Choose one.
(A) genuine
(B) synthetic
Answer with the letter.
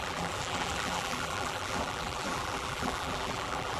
B